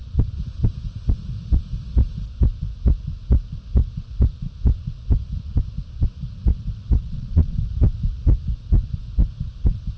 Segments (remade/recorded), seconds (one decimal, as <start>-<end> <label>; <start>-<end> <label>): 0.0-7.0 recorded; 7.0-7.6 remade; 7.6-10.0 recorded